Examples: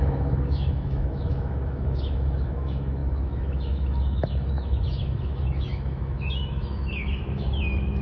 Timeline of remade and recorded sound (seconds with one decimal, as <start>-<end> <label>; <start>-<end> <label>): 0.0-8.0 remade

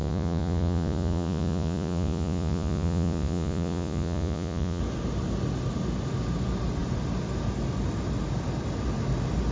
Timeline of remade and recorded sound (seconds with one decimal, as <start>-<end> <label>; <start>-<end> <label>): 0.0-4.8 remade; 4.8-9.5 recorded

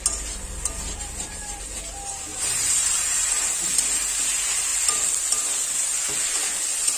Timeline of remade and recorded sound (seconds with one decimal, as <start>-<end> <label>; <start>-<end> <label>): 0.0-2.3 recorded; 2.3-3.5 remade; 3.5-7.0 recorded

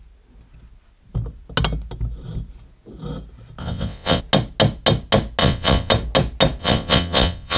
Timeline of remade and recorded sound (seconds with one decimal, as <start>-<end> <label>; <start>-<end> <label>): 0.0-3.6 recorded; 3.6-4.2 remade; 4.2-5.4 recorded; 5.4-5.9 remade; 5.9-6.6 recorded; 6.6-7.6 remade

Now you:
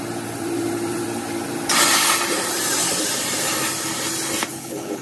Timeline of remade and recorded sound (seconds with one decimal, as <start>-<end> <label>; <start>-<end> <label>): 0.0-4.5 recorded; 4.5-5.0 remade

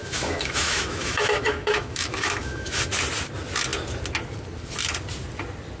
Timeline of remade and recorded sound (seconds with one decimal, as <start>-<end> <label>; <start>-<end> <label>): 0.0-2.8 remade; 2.8-5.8 recorded